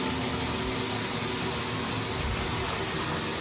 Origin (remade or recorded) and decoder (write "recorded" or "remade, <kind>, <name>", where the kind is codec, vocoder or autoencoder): recorded